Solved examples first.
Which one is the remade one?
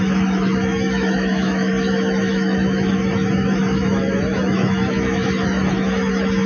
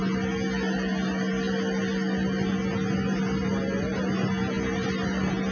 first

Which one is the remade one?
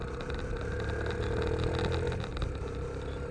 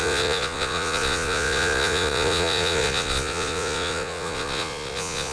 second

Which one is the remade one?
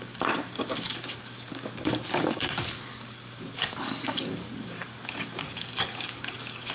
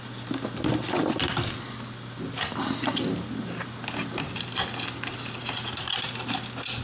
first